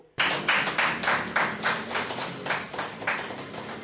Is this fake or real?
real